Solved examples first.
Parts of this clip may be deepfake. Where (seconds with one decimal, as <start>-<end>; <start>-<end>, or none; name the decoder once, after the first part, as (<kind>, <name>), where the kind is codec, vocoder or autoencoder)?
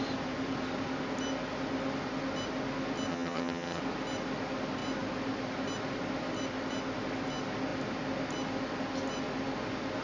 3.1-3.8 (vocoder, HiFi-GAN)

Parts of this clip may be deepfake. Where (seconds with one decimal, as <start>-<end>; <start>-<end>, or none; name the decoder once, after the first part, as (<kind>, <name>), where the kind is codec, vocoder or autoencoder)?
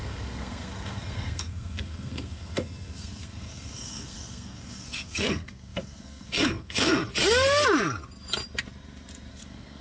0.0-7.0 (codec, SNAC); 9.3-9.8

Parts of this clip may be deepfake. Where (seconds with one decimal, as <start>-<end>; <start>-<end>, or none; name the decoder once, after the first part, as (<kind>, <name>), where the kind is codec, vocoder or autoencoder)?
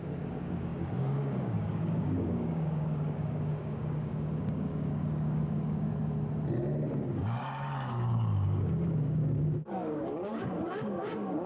0.0-5.9 (codec, DAC); 7.0-11.5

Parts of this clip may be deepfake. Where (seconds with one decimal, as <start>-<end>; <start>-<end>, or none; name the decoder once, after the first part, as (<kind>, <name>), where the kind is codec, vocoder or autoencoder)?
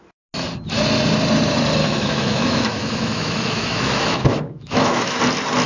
1.8-5.2 (autoencoder, DAC-VAE)